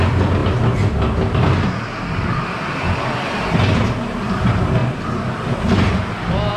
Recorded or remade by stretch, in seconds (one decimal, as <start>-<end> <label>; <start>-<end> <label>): 0.0-6.6 recorded